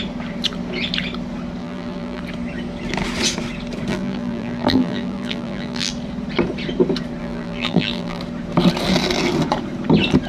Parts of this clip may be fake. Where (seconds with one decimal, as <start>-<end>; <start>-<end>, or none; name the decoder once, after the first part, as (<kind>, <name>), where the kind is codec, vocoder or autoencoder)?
1.6-2.2 (vocoder, BigVGAN v2); 3.9-5.9; 7.2-8.2